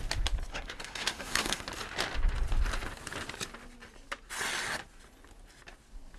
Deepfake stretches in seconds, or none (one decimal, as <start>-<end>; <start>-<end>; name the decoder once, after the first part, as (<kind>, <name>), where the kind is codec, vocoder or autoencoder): 0.5-1.6 (codec, SNAC)